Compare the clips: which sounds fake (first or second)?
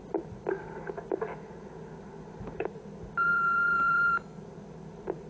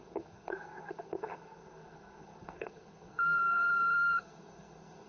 second